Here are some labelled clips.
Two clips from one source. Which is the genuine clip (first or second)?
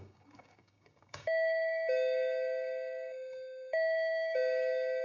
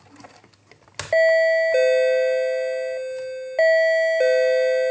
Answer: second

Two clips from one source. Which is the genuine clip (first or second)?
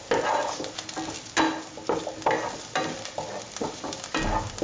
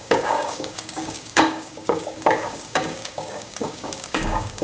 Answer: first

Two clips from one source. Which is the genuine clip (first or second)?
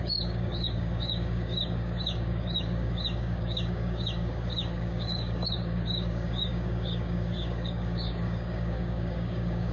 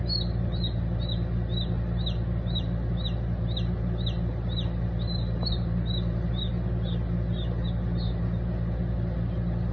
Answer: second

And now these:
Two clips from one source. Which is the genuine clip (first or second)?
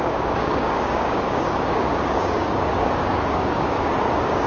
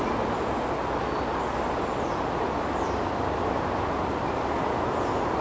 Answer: second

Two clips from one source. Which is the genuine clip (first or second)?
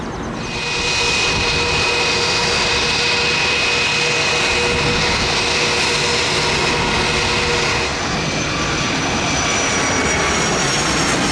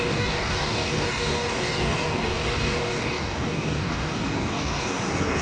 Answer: first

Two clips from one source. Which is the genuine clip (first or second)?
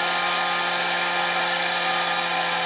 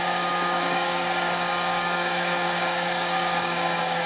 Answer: first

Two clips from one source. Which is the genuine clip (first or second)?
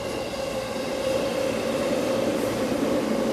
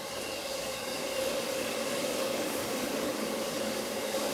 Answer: first